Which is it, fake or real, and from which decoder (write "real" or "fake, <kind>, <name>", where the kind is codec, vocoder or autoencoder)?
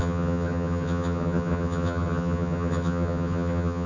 fake, vocoder, HiFi-GAN